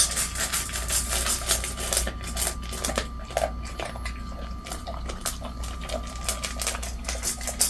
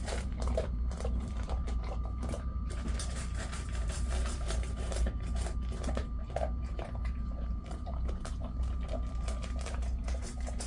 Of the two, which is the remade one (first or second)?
second